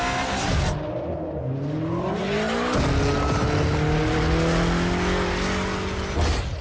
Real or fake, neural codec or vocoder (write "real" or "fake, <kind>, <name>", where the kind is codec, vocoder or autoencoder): real